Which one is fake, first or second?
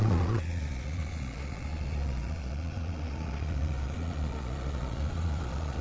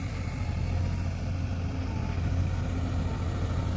first